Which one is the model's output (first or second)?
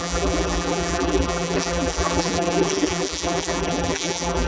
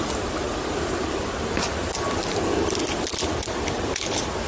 first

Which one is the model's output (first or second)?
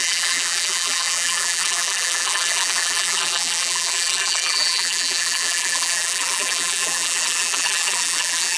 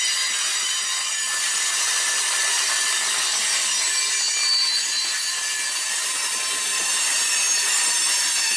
first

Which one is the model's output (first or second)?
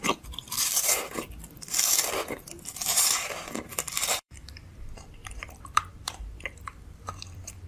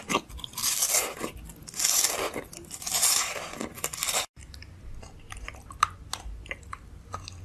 first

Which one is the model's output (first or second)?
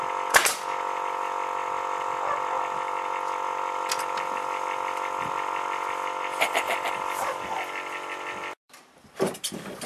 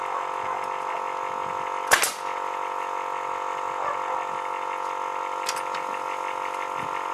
first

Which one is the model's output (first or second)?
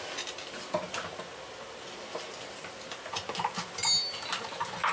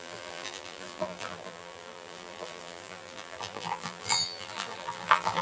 second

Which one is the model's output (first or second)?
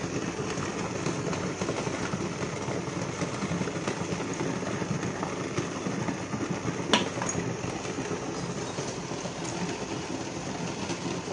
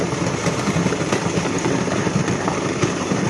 second